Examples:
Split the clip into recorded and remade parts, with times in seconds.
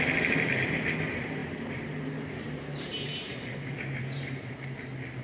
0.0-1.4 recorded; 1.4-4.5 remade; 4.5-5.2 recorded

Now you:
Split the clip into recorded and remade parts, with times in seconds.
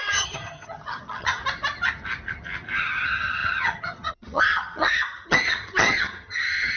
0.0-1.4 remade; 1.4-2.8 recorded; 2.8-6.8 remade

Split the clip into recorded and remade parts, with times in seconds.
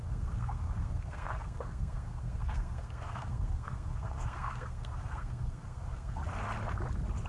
0.0-6.2 remade; 6.2-7.3 recorded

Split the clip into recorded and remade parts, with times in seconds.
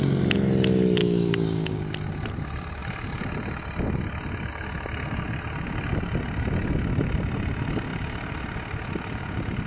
0.0-1.0 recorded; 1.0-1.8 remade; 1.8-9.7 recorded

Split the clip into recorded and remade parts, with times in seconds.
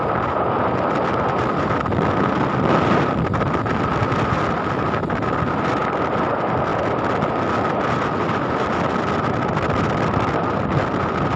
0.0-11.4 recorded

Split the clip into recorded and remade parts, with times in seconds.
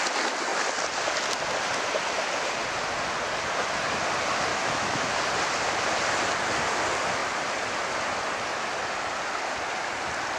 0.0-4.5 recorded; 4.5-5.1 remade; 5.1-10.4 recorded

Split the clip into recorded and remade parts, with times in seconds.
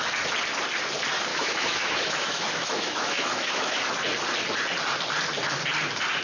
0.0-1.3 recorded; 1.3-3.8 remade; 3.8-6.2 recorded